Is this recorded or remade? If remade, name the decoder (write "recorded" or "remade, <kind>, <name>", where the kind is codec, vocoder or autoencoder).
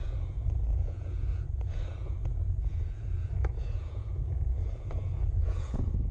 remade, vocoder, Vocos